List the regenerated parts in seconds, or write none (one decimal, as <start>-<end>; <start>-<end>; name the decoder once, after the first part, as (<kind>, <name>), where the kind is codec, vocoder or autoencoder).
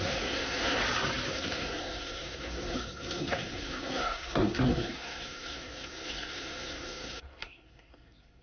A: 0.0-0.8 (codec, SNAC); 1.3-8.4